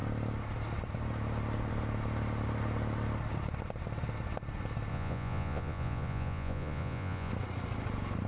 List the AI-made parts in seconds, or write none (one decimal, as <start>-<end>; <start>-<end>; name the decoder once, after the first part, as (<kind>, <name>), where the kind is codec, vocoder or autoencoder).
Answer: 4.9-7.3 (vocoder, Vocos)